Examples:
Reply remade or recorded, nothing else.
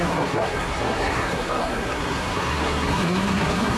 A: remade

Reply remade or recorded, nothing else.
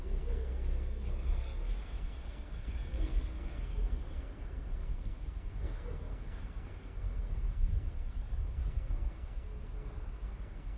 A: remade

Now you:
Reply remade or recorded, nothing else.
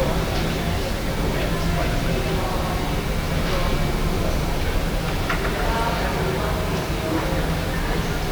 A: recorded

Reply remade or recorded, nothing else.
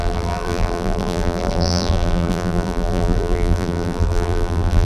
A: remade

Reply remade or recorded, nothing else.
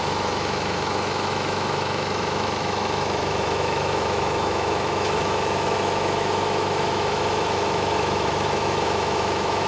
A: remade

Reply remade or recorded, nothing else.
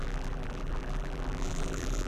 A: remade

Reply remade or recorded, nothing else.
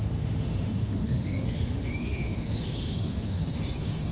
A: remade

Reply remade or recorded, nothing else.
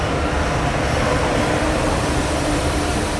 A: recorded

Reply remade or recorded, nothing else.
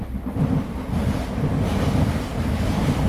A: recorded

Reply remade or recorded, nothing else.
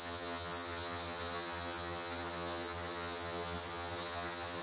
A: remade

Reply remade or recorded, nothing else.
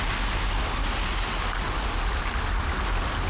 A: recorded